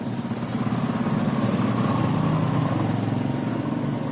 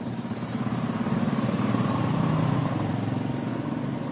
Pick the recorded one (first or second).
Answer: first